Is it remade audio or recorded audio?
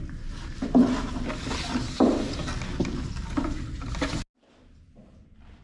recorded